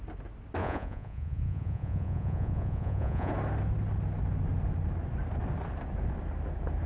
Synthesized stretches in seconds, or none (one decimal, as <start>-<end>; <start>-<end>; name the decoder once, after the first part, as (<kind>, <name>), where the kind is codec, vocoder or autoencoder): 0.6-3.3 (vocoder, Vocos)